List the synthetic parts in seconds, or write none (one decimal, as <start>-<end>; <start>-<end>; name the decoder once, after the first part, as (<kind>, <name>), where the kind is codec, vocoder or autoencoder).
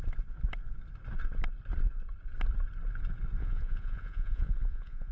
3.4-5.1 (vocoder, Vocos)